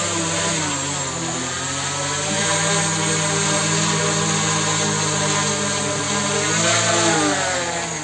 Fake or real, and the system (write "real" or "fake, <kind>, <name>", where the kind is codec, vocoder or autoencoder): real